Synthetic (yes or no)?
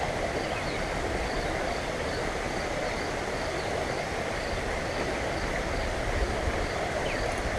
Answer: no